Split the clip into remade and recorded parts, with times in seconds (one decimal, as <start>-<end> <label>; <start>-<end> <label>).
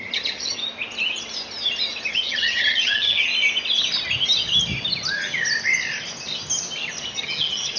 0.0-0.6 remade; 0.6-2.1 recorded; 2.1-3.3 remade; 3.3-7.1 recorded; 7.1-7.8 remade